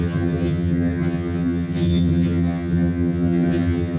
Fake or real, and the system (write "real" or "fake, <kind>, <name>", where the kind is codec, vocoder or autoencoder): fake, vocoder, HiFi-GAN